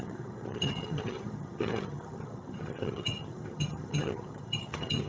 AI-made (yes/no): yes